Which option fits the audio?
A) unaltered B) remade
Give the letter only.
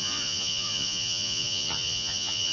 B